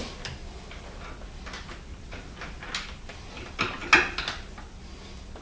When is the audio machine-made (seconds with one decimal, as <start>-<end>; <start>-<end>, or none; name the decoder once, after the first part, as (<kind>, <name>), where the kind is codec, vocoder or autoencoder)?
none